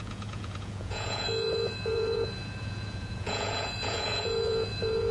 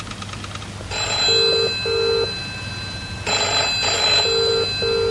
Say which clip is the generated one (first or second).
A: first